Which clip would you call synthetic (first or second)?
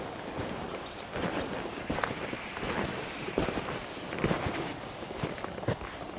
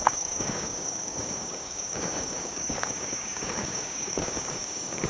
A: second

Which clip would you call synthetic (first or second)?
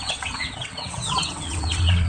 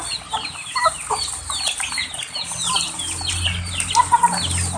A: first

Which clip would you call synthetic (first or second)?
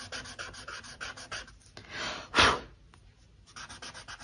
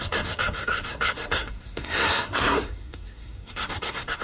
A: second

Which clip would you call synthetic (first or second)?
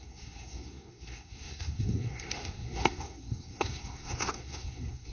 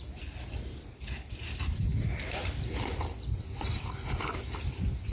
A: first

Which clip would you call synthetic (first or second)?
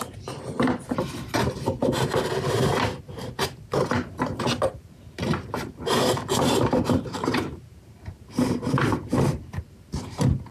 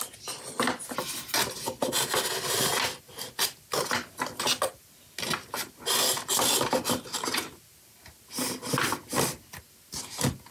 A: first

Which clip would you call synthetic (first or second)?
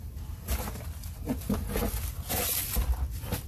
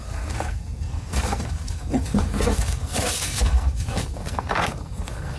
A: second